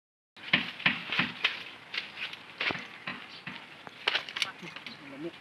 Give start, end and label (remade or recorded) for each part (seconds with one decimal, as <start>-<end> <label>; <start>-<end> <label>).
0.0-5.4 recorded